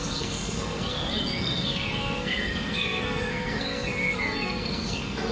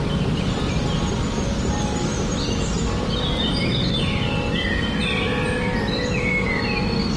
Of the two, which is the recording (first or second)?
second